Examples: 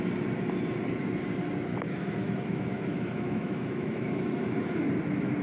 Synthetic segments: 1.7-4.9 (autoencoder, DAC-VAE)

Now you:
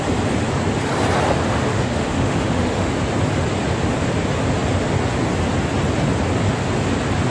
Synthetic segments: 1.7-2.9 (autoencoder, DAC-VAE)

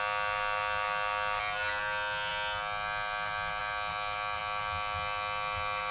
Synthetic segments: none

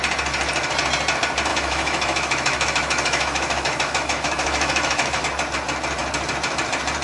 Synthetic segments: 1.5-5.2 (autoencoder, DAC-VAE)

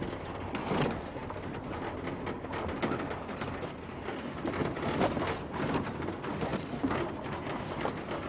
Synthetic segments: none

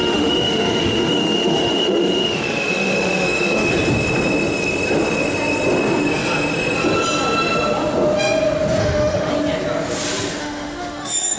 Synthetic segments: 0.0-3.7 (autoencoder, DAC-VAE); 8.8-9.3; 10.4-11.4

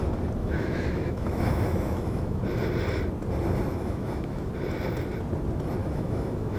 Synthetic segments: 0.4-2.4 (autoencoder, DAC-VAE); 3.7-4.5; 5.8-6.6

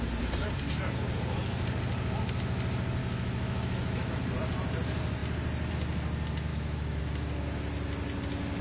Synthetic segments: 3.0-4.1 (autoencoder, DAC-VAE); 6.5-7.0